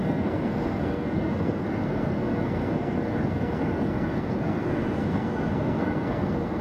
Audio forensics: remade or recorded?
remade